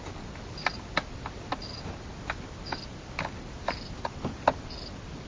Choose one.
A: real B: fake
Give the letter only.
A